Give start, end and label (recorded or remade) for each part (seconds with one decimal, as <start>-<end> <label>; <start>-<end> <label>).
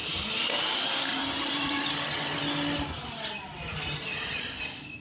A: 0.0-1.1 recorded; 1.1-1.9 remade; 1.9-5.0 recorded